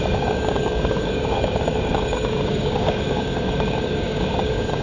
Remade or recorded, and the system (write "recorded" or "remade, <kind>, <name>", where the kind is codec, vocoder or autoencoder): remade, codec, DAC